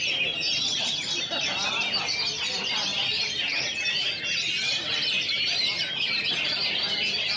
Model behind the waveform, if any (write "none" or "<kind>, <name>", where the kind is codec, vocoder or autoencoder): none